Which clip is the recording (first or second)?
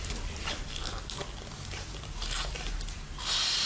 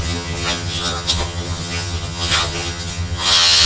first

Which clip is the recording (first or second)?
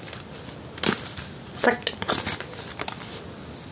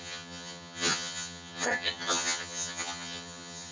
first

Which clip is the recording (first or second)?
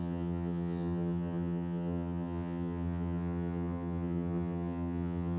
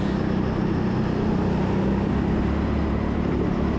second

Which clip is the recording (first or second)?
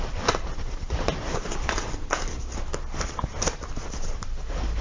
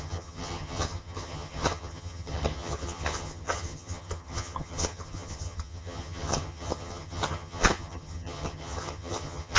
first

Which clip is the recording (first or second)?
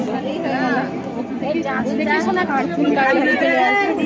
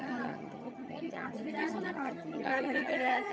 first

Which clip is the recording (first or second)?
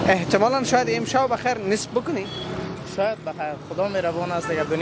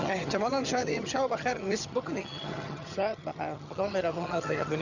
first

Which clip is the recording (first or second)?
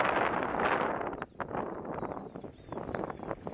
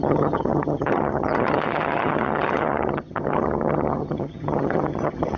first